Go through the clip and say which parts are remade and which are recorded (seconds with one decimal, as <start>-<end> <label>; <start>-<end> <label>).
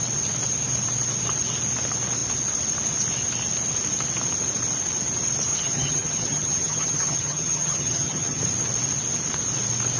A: 0.0-5.5 recorded; 5.5-8.4 remade; 8.4-10.0 recorded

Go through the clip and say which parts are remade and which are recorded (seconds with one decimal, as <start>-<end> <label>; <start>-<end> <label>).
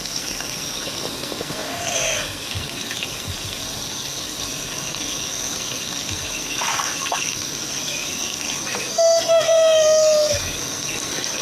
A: 0.0-11.4 remade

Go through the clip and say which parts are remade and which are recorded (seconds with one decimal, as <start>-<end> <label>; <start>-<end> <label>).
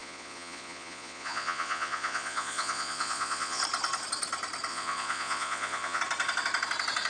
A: 0.0-3.6 remade; 3.6-4.7 recorded; 4.7-6.0 remade; 6.0-7.1 recorded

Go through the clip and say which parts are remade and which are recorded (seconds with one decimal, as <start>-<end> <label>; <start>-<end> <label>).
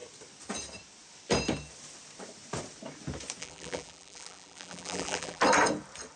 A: 0.0-3.4 recorded; 3.4-5.4 remade; 5.4-6.2 recorded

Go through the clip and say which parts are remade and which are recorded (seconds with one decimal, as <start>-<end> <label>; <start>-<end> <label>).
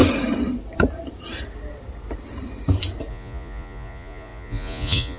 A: 0.0-3.1 recorded; 3.1-5.2 remade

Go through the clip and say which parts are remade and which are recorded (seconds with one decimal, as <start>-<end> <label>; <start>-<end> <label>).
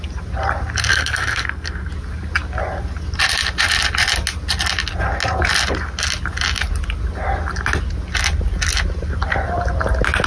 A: 0.0-0.9 recorded; 0.9-1.9 remade; 1.9-10.3 recorded